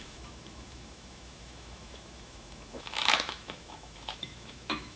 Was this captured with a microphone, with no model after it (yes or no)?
no